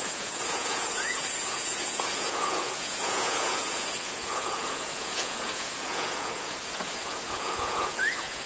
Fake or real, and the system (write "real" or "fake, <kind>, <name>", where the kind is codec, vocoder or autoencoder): fake, vocoder, Vocos